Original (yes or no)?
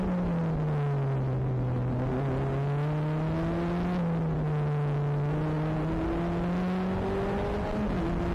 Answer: yes